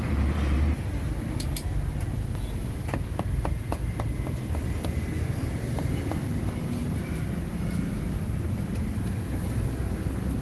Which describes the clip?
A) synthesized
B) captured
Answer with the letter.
B